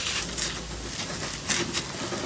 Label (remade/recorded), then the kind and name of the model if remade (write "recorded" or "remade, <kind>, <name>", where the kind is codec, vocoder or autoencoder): recorded